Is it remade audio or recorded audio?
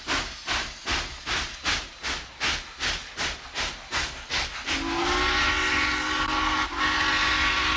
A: recorded